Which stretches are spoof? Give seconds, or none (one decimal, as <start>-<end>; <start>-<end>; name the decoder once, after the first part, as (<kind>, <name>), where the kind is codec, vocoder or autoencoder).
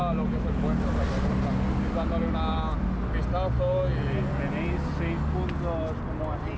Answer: none